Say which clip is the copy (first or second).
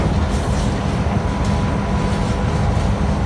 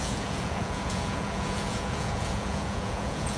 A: second